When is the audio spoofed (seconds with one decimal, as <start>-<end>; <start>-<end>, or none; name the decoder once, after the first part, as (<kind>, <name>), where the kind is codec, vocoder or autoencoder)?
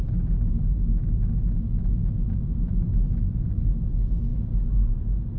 1.0-2.7 (autoencoder, DAC-VAE)